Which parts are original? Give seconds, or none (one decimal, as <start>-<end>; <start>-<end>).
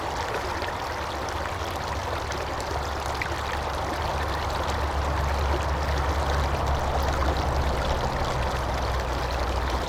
0.0-9.9